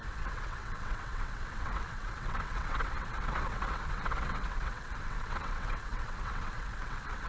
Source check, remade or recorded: remade